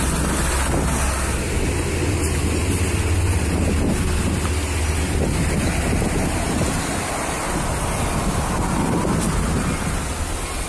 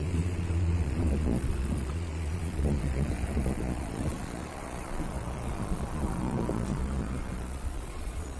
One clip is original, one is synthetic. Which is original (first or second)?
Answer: first